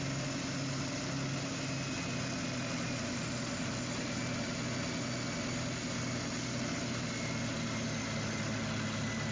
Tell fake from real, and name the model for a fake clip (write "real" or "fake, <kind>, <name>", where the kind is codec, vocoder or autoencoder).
real